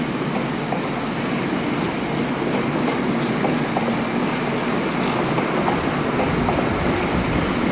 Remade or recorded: recorded